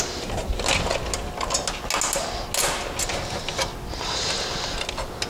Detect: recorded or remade recorded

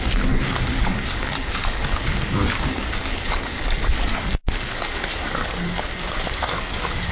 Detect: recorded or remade remade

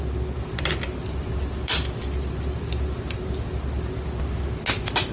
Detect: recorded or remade recorded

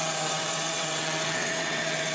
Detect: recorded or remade remade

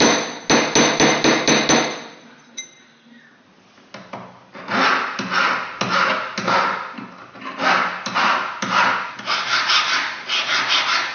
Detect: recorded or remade recorded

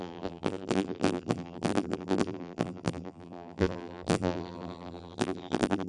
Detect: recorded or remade remade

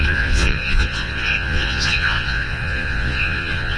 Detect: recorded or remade remade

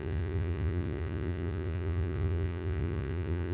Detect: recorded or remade remade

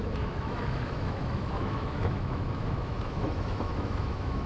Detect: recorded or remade remade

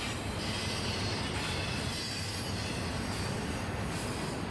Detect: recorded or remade recorded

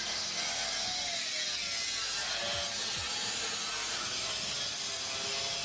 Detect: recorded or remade recorded